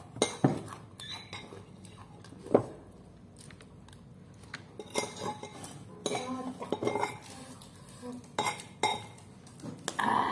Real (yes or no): yes